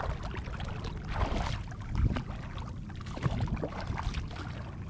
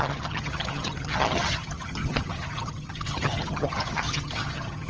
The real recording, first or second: first